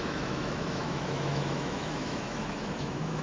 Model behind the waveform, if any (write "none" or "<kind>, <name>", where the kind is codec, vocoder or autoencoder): autoencoder, DAC-VAE